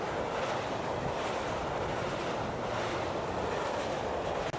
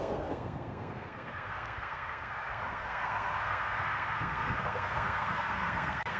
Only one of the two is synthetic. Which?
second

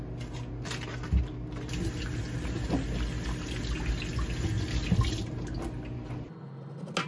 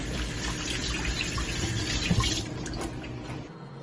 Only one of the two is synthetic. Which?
second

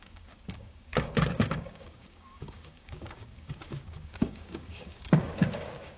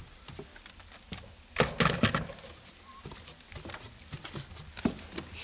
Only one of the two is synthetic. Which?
first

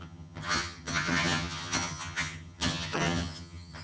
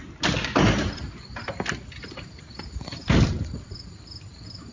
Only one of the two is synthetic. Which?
first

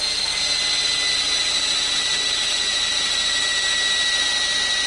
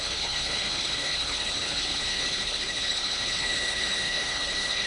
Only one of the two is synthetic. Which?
second